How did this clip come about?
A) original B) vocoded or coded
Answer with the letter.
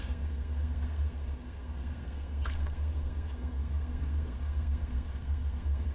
B